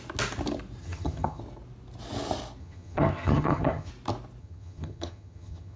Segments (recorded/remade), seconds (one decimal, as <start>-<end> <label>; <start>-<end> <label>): 0.0-0.8 recorded; 0.8-1.4 remade; 1.4-2.6 recorded; 2.6-3.9 remade; 3.9-4.4 recorded; 4.4-5.8 remade